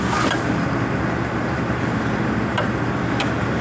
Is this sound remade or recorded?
remade